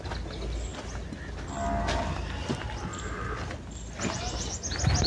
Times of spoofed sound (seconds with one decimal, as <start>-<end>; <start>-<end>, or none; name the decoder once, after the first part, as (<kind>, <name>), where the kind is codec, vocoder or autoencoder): none